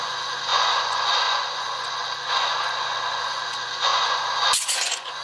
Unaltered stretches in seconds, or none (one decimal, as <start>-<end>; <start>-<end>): none